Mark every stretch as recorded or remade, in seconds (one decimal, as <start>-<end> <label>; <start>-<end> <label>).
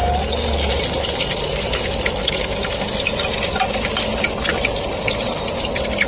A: 0.0-6.1 recorded